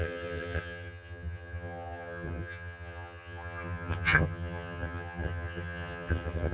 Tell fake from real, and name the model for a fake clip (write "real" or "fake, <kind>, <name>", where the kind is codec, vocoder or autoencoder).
fake, vocoder, HiFi-GAN